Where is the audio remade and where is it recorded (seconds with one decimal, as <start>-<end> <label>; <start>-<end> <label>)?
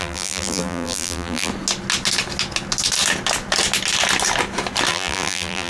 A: 0.0-1.5 remade; 1.5-4.9 recorded; 4.9-5.7 remade